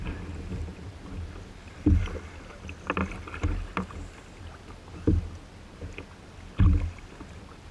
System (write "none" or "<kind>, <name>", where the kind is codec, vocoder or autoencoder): none